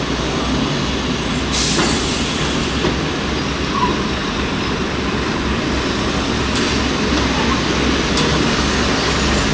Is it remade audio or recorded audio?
recorded